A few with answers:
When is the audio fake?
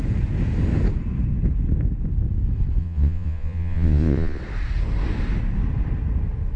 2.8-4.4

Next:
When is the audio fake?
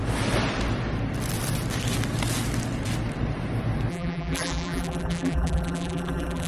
3.9-6.5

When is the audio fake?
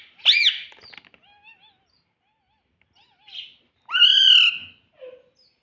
none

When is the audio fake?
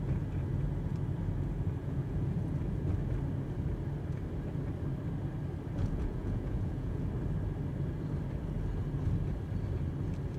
1.8-2.4; 5.8-7.1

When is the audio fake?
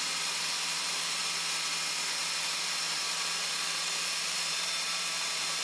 0.0-1.2; 2.2-5.6